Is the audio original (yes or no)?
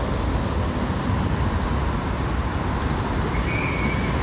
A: yes